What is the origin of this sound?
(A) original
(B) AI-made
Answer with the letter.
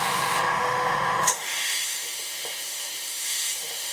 B